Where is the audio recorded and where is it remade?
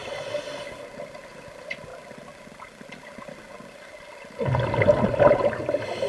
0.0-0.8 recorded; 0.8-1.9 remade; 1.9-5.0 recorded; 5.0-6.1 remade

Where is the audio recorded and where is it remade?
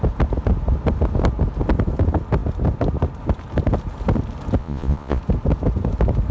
0.0-4.6 recorded; 4.6-5.2 remade; 5.2-6.3 recorded